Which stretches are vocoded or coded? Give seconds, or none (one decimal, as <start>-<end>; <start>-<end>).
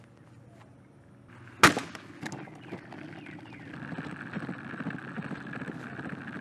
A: none